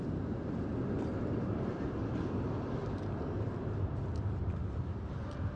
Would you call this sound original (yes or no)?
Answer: yes